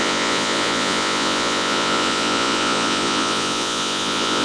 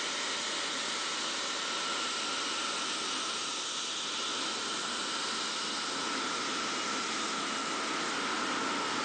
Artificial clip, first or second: first